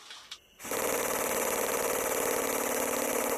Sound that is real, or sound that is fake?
real